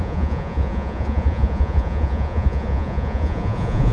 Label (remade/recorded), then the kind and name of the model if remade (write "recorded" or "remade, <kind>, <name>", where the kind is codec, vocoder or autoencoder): remade, vocoder, Vocos